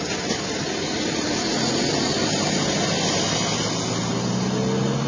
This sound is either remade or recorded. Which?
recorded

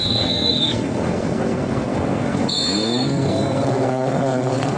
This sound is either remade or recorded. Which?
remade